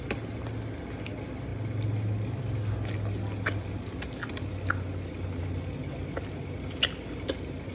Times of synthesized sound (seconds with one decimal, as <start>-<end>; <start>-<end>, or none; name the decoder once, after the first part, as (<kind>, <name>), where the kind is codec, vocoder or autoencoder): none